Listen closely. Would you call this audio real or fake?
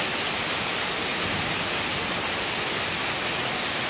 real